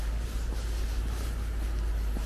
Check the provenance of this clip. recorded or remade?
recorded